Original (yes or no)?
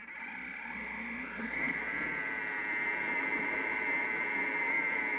yes